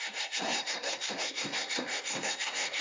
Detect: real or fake fake